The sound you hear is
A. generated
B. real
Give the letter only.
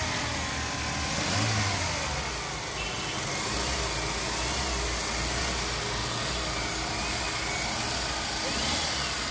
B